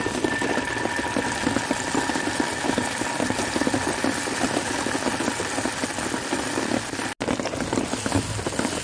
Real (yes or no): yes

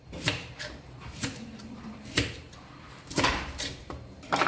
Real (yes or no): no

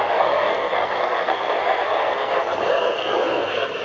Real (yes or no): no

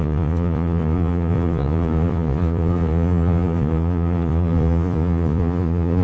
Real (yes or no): no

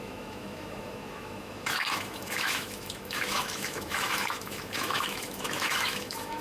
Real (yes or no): no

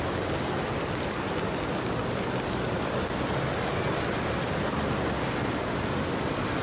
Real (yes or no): yes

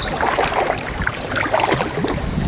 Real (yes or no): yes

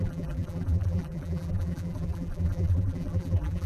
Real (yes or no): no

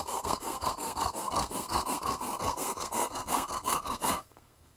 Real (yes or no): no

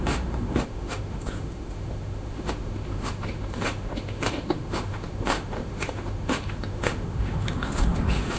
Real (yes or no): no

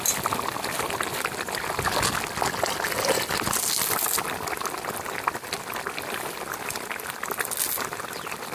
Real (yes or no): yes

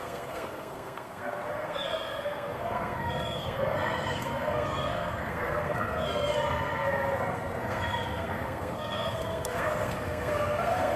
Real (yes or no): no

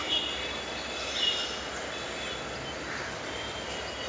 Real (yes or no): yes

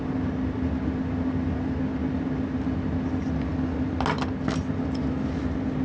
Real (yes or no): yes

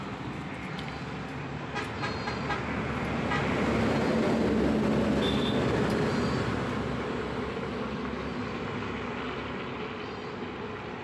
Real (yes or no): yes